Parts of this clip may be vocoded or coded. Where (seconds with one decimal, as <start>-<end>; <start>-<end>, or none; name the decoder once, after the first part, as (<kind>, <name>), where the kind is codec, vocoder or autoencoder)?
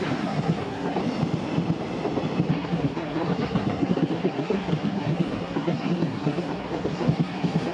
0.0-1.0 (codec, SNAC); 2.5-7.7